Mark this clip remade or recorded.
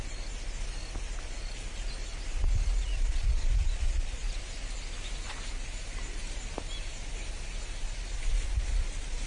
recorded